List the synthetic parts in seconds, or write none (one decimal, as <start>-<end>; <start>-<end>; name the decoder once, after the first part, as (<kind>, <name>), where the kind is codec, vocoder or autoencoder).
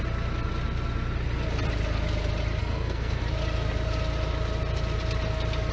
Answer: 2.6-3.2 (codec, SNAC)